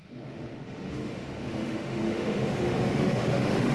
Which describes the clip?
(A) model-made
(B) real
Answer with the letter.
A